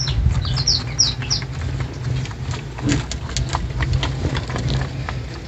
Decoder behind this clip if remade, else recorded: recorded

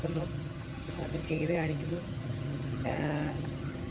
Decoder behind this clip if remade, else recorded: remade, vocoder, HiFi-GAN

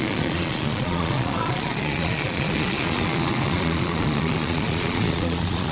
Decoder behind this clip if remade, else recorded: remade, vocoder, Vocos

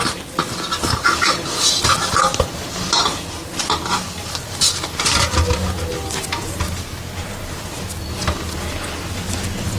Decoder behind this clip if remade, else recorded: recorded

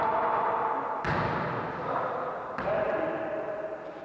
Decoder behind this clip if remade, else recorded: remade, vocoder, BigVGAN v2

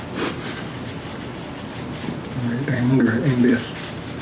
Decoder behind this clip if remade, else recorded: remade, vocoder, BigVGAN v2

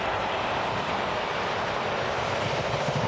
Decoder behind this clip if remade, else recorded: remade, vocoder, BigVGAN v2